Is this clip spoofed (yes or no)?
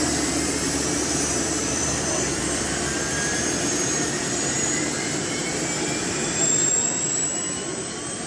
yes